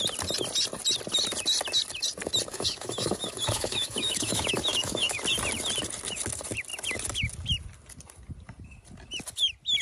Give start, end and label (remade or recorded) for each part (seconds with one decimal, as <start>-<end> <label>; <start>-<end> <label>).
0.0-2.5 recorded; 2.5-5.2 remade; 5.2-9.8 recorded